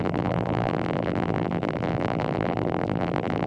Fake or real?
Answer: fake